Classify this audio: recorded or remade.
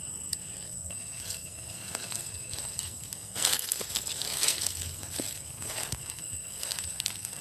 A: remade